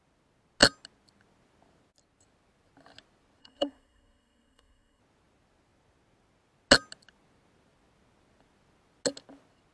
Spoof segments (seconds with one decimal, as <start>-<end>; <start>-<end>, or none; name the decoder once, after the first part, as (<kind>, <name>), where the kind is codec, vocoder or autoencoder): 3.4-5.0 (codec, SNAC)